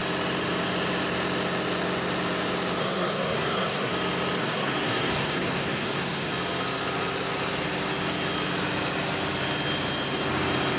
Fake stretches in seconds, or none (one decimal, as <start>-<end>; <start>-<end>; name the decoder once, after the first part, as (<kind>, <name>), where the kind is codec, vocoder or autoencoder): 2.8-3.9 (codec, SNAC); 4.4-6.3